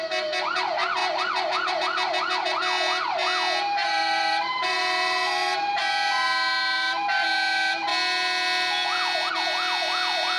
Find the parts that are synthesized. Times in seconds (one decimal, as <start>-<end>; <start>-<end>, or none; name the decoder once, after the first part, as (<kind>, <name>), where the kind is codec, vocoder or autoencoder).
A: 3.8-5.8 (vocoder, BigVGAN v2)